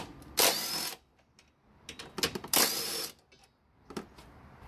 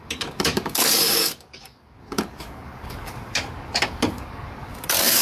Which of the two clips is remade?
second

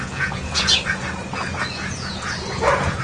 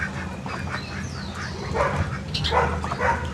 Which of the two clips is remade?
first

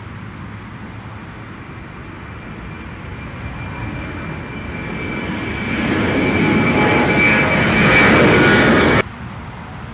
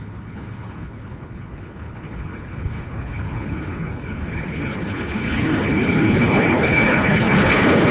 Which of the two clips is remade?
second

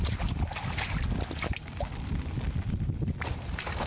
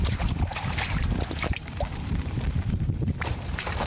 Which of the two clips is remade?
second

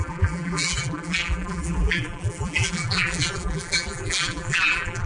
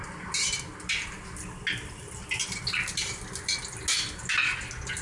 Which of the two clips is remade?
first